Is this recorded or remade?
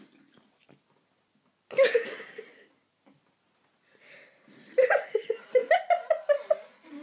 recorded